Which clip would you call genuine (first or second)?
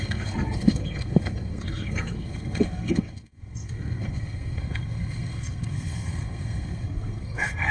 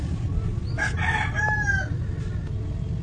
second